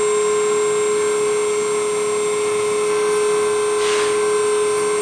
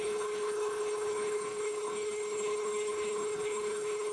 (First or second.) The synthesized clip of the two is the second